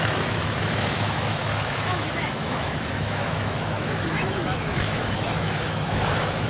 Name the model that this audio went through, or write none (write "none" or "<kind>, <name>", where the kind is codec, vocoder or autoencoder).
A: autoencoder, DAC-VAE